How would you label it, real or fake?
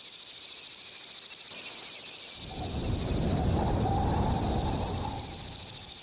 real